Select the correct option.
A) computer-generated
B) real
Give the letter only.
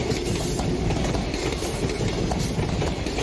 B